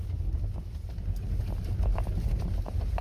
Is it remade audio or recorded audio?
recorded